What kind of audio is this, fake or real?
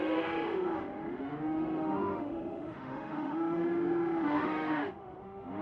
fake